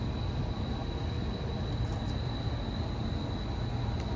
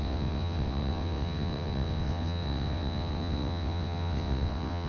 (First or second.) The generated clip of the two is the second